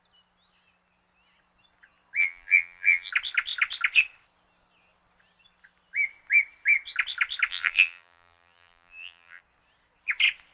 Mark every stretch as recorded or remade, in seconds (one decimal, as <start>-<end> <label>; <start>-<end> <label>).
0.0-2.2 recorded; 2.2-3.1 remade; 3.1-7.5 recorded; 7.5-9.4 remade; 9.4-10.5 recorded